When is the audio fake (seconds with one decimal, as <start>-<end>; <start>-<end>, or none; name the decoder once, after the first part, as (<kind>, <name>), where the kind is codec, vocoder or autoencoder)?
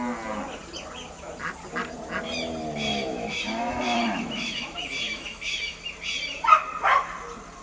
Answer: 2.9-5.8 (autoencoder, DAC-VAE)